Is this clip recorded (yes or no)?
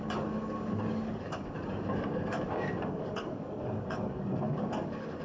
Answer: no